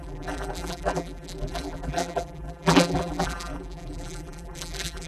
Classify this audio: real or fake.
fake